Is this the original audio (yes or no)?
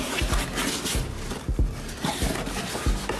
yes